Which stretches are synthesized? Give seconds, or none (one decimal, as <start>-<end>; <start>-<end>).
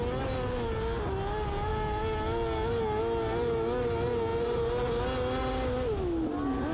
4.3-4.9